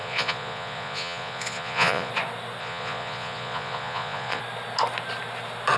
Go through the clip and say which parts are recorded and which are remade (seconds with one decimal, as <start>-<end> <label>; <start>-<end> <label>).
0.0-2.1 remade; 2.1-2.6 recorded; 2.6-4.4 remade; 4.4-5.8 recorded